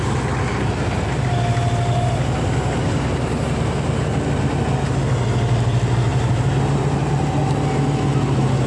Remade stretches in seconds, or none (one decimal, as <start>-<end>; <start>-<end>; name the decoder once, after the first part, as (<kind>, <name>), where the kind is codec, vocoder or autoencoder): 6.1-7.1 (vocoder, BigVGAN v2)